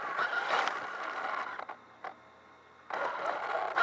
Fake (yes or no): no